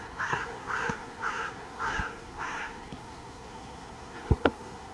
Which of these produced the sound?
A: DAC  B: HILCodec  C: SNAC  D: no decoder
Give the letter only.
C